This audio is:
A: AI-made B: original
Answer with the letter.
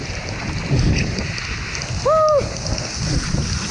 B